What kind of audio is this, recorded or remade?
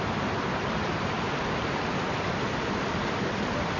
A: recorded